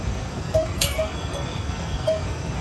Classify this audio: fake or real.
fake